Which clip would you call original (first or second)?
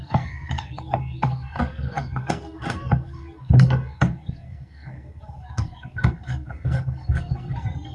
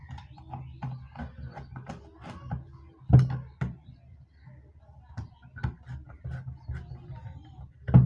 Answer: second